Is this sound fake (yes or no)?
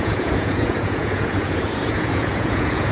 yes